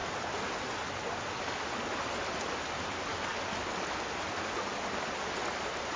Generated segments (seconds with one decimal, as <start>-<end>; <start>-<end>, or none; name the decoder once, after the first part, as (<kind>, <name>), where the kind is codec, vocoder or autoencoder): none